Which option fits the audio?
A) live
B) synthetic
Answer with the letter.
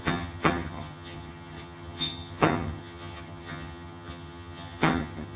B